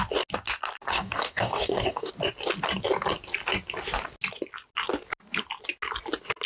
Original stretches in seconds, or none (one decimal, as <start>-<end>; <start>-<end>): 0.0-0.9; 2.1-6.5